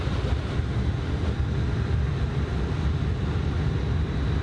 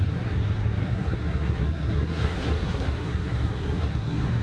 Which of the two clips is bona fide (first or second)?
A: first